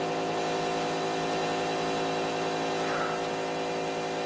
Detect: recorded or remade recorded